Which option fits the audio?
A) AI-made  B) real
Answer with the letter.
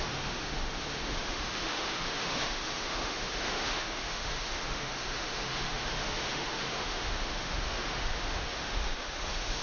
A